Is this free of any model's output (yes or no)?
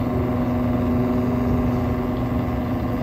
yes